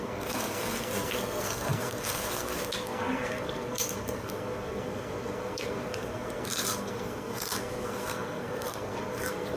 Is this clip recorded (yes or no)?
no